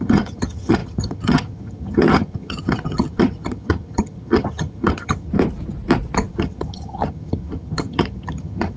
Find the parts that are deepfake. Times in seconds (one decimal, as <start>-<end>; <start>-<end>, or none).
0.0-5.3; 6.3-8.8